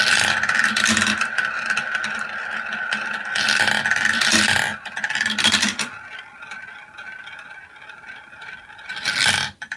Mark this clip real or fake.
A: real